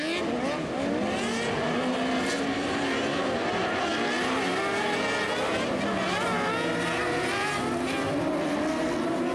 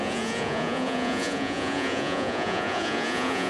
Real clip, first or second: first